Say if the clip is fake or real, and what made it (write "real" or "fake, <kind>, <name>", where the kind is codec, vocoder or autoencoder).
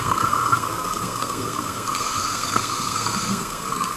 fake, codec, SNAC